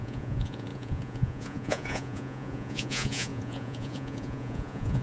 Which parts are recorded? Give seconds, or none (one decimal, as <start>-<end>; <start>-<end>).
none